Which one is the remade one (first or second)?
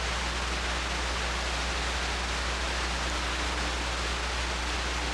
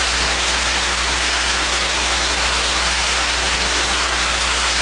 second